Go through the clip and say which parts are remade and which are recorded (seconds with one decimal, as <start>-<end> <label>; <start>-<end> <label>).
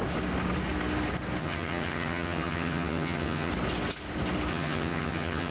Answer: 0.0-1.4 recorded; 1.4-3.5 remade; 3.5-4.5 recorded; 4.5-5.5 remade